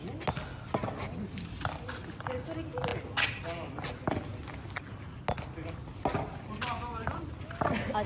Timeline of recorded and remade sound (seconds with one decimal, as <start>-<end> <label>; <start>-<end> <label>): 0.0-8.1 recorded